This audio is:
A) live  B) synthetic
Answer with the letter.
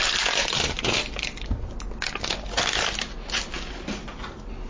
A